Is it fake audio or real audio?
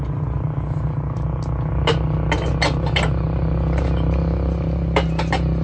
real